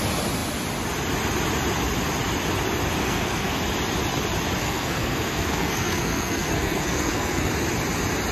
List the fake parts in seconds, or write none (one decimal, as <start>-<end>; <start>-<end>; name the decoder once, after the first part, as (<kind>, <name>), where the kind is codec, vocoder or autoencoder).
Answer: 3.0-3.6 (codec, SNAC); 4.6-7.5